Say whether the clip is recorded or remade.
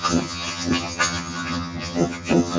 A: remade